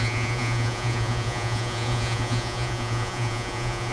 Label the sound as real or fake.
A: fake